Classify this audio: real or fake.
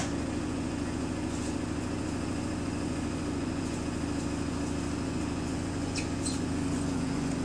fake